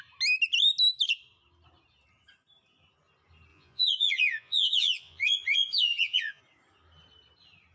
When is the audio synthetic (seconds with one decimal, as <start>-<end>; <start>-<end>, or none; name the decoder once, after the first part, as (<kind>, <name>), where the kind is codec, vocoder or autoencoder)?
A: 3.5-6.4 (vocoder, Vocos)